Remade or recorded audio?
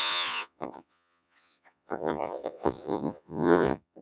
remade